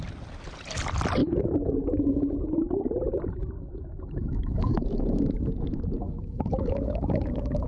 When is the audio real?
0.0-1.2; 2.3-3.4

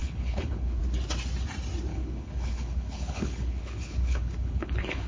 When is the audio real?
0.8-1.9

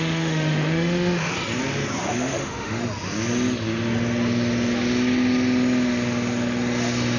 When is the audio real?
1.3-2.0; 2.8-7.2

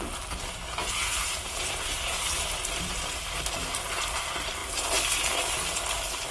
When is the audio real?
0.0-0.8; 2.2-6.3